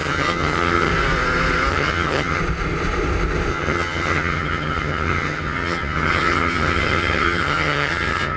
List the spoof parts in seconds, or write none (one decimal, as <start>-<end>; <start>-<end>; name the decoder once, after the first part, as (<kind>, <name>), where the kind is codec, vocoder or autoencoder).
0.0-0.9 (vocoder, HiFi-GAN); 1.7-2.4; 3.5-8.4